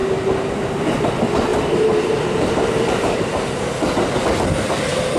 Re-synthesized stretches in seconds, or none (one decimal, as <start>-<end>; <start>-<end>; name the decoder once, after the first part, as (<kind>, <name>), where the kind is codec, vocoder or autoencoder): 1.5-3.2 (vocoder, BigVGAN v2)